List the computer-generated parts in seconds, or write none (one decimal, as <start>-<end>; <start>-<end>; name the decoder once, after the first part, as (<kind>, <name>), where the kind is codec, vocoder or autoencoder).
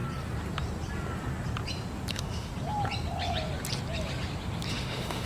2.1-2.5 (autoencoder, DAC-VAE); 4.7-5.3